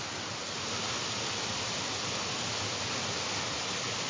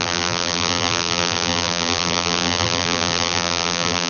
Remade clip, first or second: second